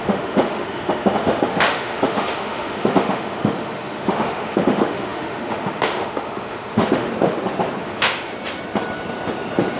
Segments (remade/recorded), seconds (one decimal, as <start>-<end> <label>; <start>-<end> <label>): 0.0-7.1 remade; 7.1-7.8 recorded; 7.8-8.3 remade; 8.3-9.8 recorded